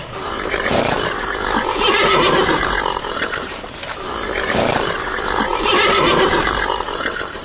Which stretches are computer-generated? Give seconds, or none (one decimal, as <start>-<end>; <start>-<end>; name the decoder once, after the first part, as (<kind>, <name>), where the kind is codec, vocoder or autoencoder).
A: 0.0-7.4 (vocoder, BigVGAN v2)